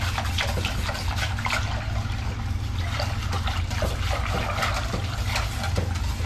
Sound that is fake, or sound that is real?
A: real